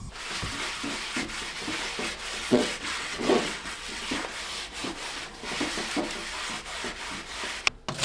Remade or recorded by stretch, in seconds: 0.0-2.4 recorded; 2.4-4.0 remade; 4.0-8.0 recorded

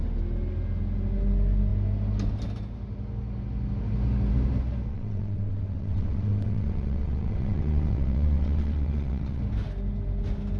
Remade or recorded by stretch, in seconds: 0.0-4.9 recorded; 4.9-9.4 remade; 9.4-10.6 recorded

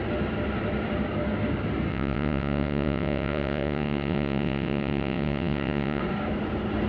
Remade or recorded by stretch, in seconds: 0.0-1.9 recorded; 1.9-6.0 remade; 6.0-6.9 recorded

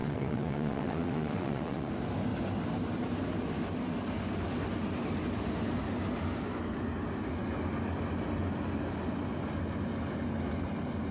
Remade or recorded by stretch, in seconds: 0.0-1.9 remade; 1.9-11.1 recorded